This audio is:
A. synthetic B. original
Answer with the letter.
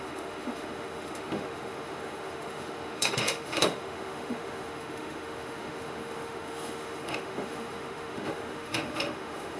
A